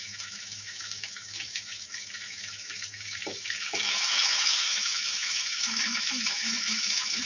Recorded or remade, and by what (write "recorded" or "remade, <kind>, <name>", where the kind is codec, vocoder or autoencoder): remade, autoencoder, DAC-VAE